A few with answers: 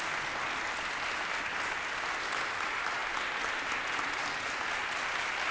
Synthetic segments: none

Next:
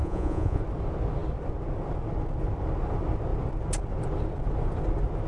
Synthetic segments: 0.0-0.6 (vocoder, Vocos)

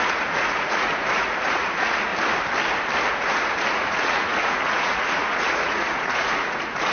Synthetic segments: 0.0-2.1 (vocoder, Vocos); 3.1-6.9

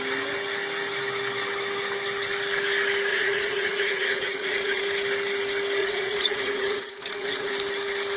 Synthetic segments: 3.1-4.8 (vocoder, Vocos); 5.8-7.5

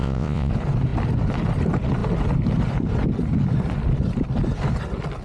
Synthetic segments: 0.0-0.5 (vocoder, Vocos)

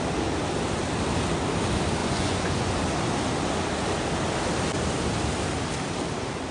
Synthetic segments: 2.0-2.7 (vocoder, Vocos)